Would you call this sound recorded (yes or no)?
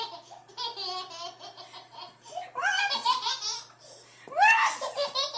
yes